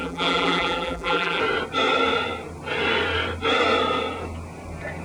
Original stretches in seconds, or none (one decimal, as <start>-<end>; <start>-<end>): 1.4-5.0